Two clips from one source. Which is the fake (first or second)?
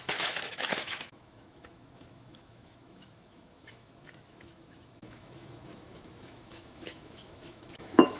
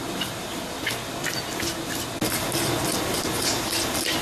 first